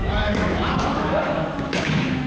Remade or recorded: remade